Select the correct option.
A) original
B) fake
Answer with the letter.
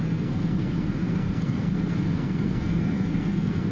B